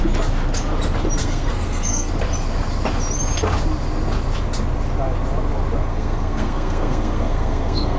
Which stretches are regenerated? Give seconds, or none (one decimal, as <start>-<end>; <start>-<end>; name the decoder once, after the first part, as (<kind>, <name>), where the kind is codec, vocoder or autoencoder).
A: 1.2-2.1 (codec, SNAC); 5.9-8.0